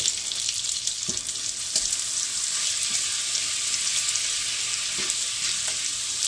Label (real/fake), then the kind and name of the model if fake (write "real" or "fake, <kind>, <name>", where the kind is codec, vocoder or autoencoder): real